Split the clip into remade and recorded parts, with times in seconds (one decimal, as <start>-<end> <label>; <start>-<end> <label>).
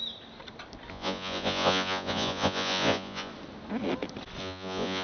0.0-0.9 recorded; 0.9-3.3 remade; 3.3-4.4 recorded; 4.4-5.0 remade